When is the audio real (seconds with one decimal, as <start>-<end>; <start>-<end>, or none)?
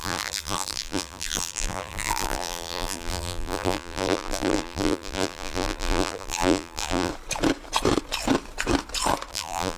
7.1-9.3